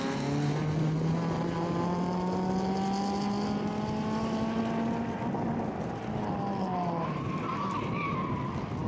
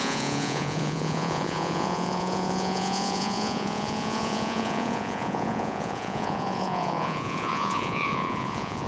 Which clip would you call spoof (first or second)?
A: second